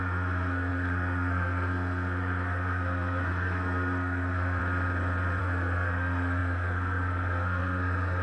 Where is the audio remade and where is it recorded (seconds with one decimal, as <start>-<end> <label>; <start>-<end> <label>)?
0.0-4.6 remade; 4.6-5.4 recorded; 5.4-8.2 remade